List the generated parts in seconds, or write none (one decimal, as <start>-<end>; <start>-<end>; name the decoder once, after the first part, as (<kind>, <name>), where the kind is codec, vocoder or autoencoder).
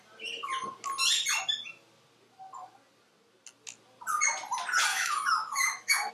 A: 4.9-6.1 (autoencoder, DAC-VAE)